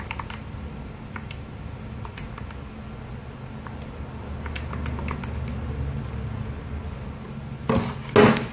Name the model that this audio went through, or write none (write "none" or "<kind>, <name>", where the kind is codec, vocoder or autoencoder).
none